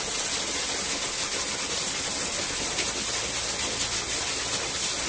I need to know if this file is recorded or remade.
recorded